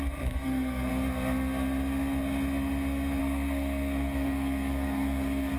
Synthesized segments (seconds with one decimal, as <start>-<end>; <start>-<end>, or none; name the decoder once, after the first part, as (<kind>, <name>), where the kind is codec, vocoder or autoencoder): 0.0-0.9 (codec, SNAC); 3.2-5.6